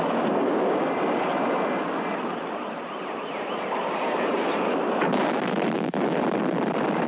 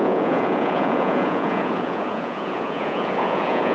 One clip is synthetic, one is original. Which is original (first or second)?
first